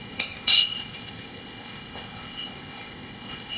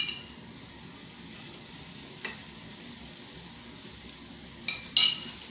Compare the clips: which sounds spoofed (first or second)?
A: first